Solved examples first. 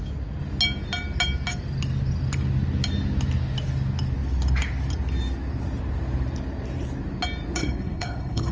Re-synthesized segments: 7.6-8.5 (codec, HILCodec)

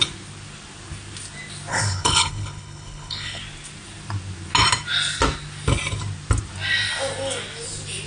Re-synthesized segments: 1.7-3.4 (codec, HILCodec)

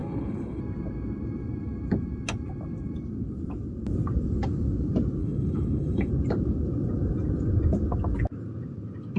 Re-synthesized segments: 0.0-0.6 (codec, HILCodec); 5.2-6.1

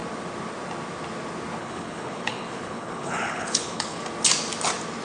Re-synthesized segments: 1.6-4.0 (codec, HILCodec)

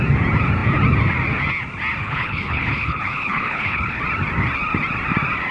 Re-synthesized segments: 2.0-4.0 (codec, HILCodec)